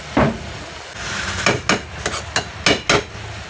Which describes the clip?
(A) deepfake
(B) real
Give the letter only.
B